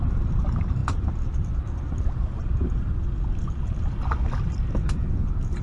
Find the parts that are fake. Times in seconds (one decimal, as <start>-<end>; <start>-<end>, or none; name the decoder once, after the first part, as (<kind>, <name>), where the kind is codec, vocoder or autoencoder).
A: none